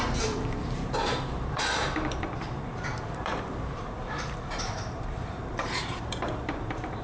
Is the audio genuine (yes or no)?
no